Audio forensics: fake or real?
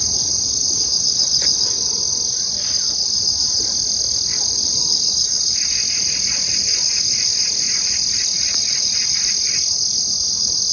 real